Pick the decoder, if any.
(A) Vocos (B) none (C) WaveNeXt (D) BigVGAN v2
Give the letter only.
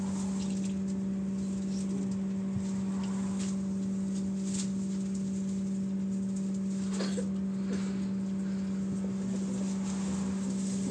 B